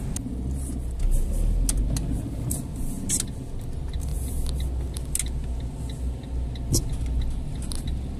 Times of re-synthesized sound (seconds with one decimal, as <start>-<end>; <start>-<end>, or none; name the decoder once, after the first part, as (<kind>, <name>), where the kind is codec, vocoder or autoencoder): none